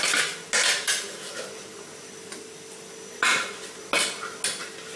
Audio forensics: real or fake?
real